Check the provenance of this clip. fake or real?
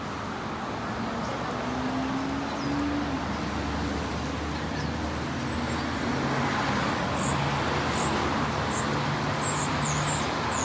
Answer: real